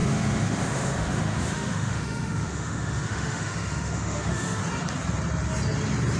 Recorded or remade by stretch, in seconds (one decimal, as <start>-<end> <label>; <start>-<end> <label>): 0.0-4.6 remade; 4.6-6.2 recorded